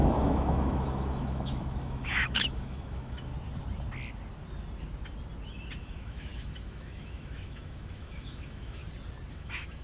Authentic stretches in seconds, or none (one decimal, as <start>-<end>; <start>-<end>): 3.3-5.8; 8.8-9.3